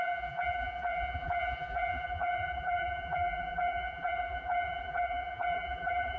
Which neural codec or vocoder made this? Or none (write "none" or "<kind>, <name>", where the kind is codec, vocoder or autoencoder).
vocoder, BigVGAN v2